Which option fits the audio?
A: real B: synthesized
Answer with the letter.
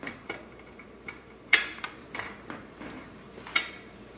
B